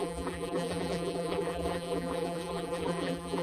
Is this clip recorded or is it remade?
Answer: remade